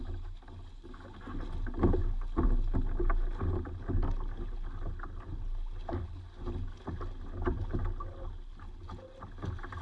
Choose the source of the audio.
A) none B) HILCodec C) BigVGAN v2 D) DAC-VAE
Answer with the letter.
A